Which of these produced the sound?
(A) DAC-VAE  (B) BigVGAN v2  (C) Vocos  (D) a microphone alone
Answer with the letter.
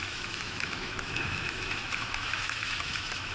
A